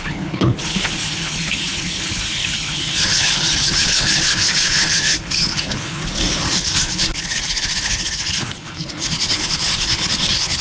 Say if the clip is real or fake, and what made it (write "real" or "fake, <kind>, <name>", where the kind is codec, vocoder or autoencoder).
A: fake, codec, HILCodec